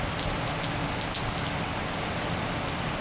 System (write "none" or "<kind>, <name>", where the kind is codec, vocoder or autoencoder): none